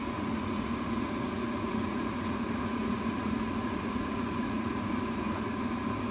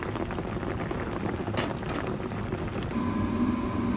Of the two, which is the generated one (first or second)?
first